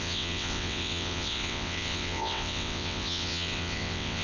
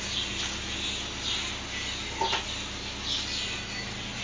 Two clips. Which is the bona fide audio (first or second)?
second